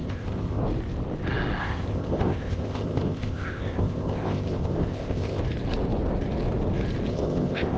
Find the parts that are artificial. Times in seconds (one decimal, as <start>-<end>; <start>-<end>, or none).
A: 0.0-0.6; 1.6-5.4; 7.1-7.8